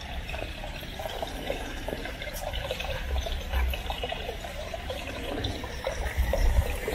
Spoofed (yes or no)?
yes